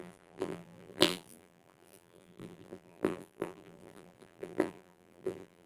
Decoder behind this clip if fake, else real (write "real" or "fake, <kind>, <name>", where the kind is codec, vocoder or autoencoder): fake, vocoder, BigVGAN v2